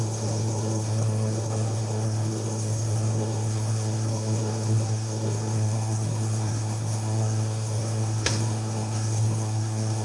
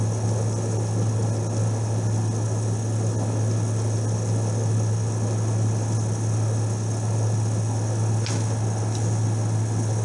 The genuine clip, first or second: second